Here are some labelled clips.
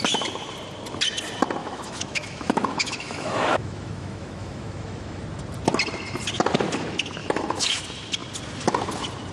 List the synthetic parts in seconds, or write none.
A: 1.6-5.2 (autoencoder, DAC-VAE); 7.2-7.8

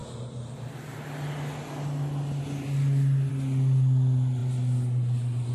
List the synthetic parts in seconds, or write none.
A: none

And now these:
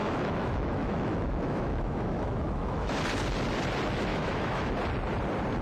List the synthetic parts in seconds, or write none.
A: 0.0-2.9 (autoencoder, DAC-VAE); 4.1-4.7